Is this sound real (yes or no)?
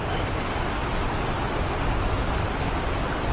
yes